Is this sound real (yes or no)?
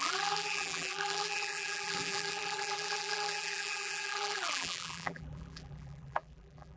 no